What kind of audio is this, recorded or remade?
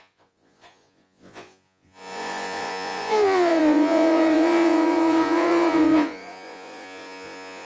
remade